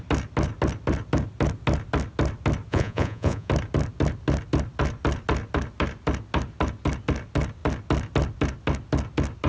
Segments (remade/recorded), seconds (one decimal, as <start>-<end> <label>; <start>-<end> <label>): 0.0-2.7 recorded; 2.7-3.5 remade; 3.5-9.5 recorded